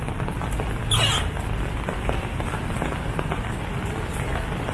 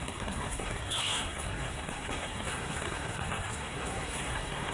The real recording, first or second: first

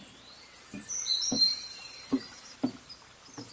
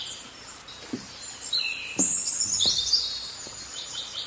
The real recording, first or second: second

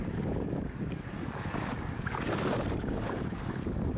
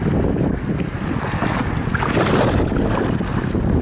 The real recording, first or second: second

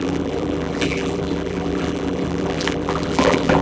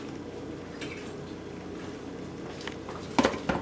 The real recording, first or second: second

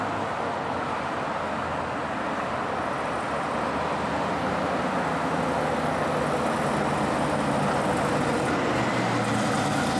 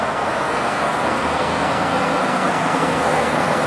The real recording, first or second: first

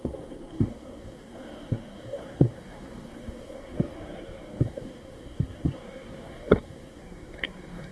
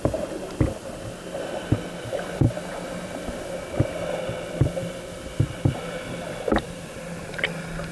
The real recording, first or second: second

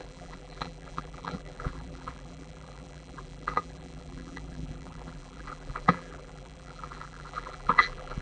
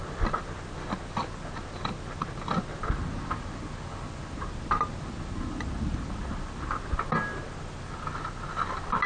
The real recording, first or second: second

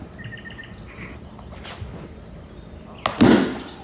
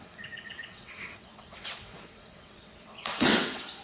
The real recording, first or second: first